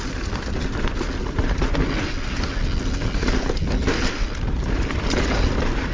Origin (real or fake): real